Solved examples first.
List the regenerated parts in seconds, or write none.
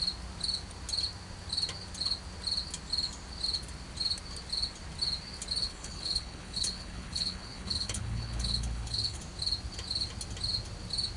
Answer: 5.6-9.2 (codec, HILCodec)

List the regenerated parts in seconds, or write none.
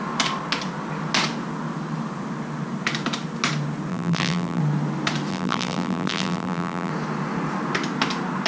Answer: 3.9-4.6 (vocoder, BigVGAN v2); 5.3-6.9